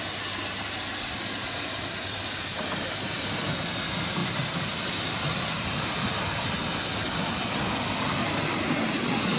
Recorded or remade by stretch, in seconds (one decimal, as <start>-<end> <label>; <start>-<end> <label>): 0.0-4.2 recorded; 4.2-5.2 remade; 5.2-9.4 recorded